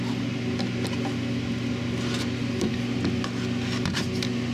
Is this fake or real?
real